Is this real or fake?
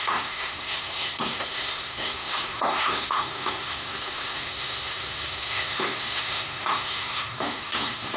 fake